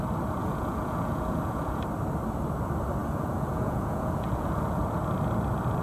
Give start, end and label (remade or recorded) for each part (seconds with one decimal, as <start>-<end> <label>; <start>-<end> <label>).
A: 0.0-0.4 recorded; 0.4-1.8 remade; 1.8-3.0 recorded; 3.0-4.8 remade; 4.8-5.8 recorded